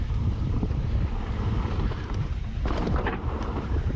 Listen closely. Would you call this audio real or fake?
fake